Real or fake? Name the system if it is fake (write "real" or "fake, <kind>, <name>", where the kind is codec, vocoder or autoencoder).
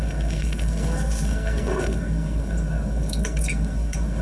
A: fake, codec, SNAC